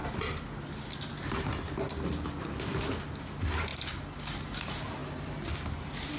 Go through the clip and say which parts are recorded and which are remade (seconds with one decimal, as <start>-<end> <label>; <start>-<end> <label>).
0.0-6.2 recorded

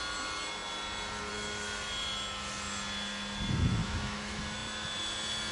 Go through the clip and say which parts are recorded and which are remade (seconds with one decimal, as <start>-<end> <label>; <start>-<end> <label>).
0.0-3.8 recorded; 3.8-4.4 remade; 4.4-5.5 recorded

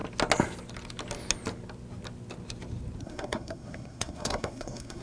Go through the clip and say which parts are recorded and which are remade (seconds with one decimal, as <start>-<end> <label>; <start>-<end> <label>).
0.0-3.0 recorded; 3.0-5.0 remade